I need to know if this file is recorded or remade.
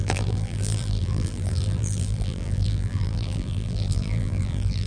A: remade